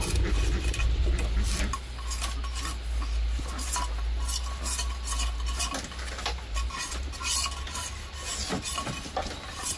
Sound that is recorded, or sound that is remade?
recorded